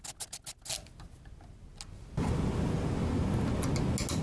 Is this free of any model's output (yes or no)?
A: yes